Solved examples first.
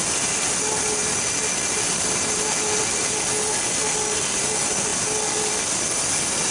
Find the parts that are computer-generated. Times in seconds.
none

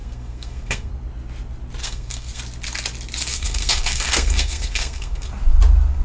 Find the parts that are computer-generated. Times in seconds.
0.0-0.9 (codec, SNAC); 1.8-2.4; 3.3-5.3

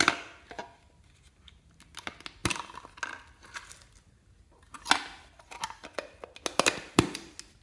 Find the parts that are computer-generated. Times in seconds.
2.4-2.9 (vocoder, BigVGAN v2)